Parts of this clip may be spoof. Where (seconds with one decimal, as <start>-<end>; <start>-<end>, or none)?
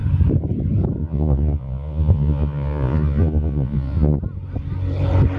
1.0-4.2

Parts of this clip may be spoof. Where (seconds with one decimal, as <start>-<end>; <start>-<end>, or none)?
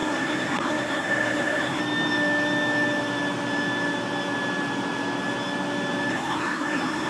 0.0-1.8; 6.1-7.1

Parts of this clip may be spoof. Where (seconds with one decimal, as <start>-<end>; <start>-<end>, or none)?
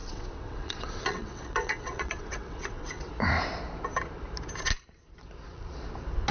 0.0-3.1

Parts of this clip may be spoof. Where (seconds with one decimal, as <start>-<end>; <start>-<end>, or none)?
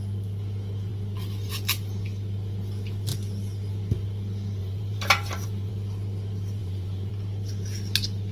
4.6-5.7; 6.6-7.1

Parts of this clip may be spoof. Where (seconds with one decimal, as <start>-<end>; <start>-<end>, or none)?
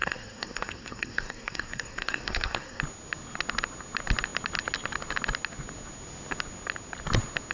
0.0-2.8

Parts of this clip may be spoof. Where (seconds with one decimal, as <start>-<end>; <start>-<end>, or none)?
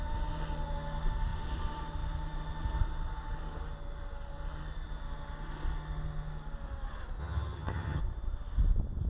7.2-8.0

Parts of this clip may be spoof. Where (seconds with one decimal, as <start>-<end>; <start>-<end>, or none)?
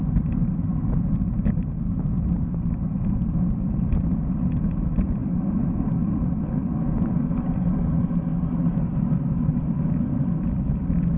none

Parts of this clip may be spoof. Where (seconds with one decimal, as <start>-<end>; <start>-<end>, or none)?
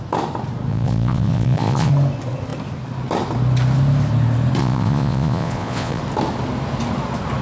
0.7-1.9; 4.6-6.0